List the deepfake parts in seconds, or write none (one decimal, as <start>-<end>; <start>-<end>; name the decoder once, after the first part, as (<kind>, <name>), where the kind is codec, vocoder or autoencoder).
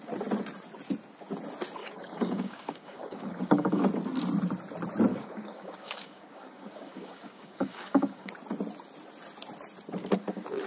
1.8-3.8 (codec, DAC); 5.1-8.3